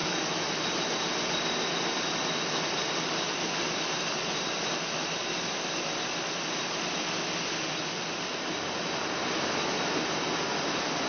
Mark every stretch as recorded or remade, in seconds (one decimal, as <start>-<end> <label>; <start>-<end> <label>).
0.0-0.5 remade; 0.5-11.1 recorded